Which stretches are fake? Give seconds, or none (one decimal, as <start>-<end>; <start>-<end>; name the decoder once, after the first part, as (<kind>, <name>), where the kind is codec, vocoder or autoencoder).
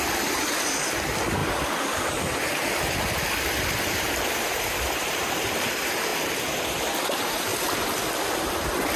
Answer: 1.4-2.1 (vocoder, BigVGAN v2); 7.5-8.4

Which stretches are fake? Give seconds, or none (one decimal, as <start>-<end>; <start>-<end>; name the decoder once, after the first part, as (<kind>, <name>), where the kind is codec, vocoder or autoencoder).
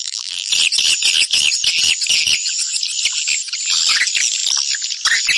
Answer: 0.0-0.5 (vocoder, BigVGAN v2)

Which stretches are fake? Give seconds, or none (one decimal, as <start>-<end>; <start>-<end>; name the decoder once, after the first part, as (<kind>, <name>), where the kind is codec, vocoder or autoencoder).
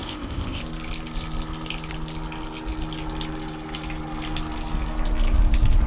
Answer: 0.0-0.6 (codec, ZipCodec)